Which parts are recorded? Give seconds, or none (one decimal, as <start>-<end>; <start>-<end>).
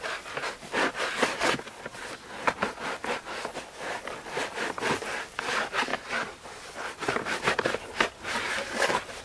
0.0-9.2